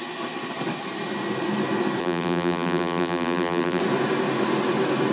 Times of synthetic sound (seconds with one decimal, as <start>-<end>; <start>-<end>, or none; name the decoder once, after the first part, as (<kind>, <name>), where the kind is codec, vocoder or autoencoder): 2.0-3.8 (vocoder, BigVGAN v2)